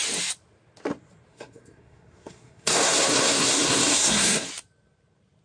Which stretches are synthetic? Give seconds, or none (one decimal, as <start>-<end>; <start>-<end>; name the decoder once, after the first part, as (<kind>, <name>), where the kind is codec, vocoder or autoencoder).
1.3-4.5 (codec, SNAC)